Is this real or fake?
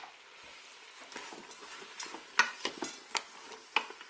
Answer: real